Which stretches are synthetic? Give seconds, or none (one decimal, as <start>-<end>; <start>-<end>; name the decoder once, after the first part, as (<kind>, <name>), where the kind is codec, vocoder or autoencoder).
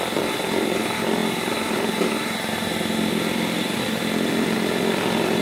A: none